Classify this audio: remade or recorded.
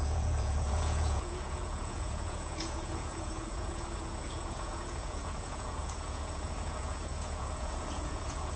remade